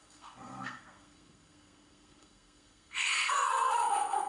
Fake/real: fake